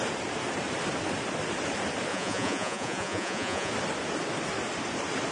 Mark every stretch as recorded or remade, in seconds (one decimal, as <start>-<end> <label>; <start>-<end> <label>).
0.0-2.1 recorded; 2.1-3.7 remade; 3.7-5.3 recorded